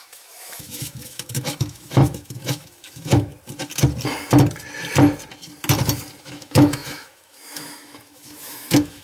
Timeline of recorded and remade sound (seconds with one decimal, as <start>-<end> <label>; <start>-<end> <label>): 0.0-3.3 remade; 3.3-6.2 recorded; 6.2-9.0 remade